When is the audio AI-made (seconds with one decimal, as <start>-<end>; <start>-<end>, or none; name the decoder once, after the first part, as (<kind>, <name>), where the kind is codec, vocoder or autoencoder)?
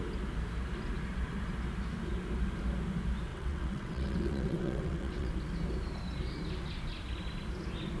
3.3-5.3 (vocoder, WaveNeXt)